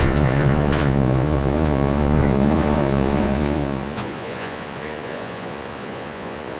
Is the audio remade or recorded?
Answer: remade